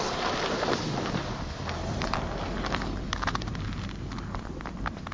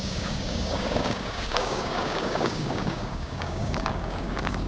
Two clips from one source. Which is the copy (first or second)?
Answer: second